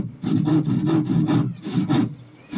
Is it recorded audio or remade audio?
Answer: recorded